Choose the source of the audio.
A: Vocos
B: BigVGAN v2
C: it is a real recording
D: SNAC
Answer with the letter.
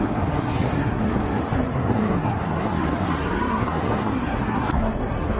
D